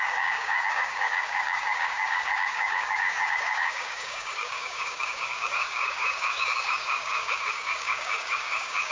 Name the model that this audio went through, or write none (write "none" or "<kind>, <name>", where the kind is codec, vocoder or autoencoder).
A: codec, DAC